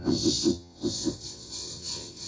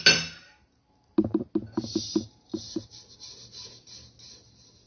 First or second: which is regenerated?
first